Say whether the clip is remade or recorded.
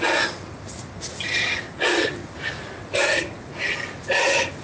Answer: recorded